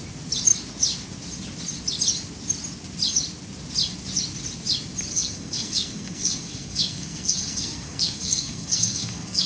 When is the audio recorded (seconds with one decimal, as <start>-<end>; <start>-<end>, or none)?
0.0-5.1